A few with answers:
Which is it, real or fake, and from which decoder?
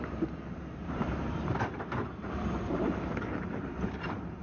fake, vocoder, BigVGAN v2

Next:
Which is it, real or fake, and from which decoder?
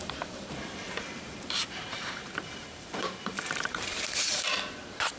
fake, vocoder, BigVGAN v2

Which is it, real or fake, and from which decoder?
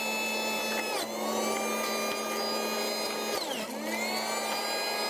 real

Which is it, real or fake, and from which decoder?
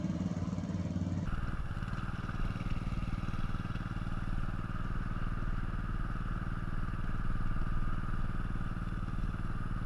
real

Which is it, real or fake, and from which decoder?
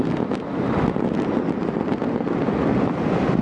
real